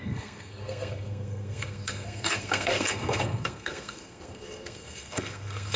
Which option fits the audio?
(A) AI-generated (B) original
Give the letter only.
A